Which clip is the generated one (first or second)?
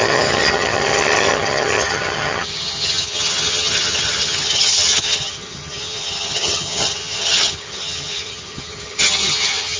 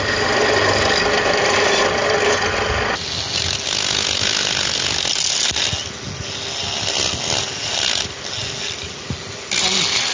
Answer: first